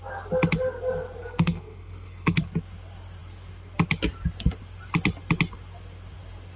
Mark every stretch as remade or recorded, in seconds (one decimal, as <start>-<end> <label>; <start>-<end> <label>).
0.0-1.2 recorded; 1.2-2.4 remade; 2.4-6.6 recorded